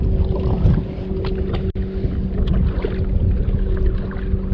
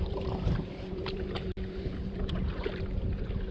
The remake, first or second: second